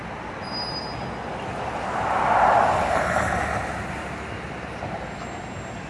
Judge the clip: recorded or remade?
recorded